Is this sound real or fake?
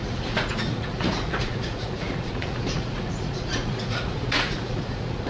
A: fake